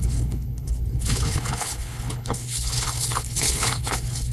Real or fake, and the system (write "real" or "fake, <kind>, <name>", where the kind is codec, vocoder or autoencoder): fake, codec, HILCodec